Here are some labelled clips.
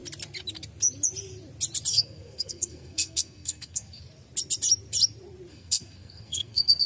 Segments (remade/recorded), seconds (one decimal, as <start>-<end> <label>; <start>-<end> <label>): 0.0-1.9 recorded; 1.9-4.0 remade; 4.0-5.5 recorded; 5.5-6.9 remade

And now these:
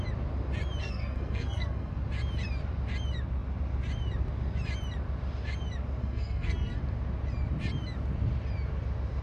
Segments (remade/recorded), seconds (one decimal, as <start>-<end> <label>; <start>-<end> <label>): 0.0-0.8 recorded; 0.8-1.9 remade; 1.9-6.0 recorded; 6.0-6.8 remade; 6.8-9.2 recorded

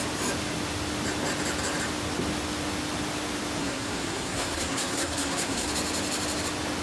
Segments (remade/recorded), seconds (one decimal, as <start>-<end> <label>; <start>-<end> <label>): 0.0-3.6 recorded; 3.6-5.7 remade; 5.7-6.8 recorded

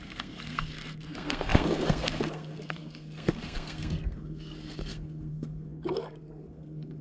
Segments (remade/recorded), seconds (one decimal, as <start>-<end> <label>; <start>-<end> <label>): 0.0-7.0 remade